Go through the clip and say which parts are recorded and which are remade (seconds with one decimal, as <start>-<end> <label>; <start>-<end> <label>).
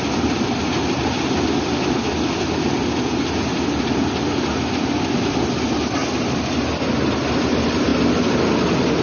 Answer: 0.0-9.0 recorded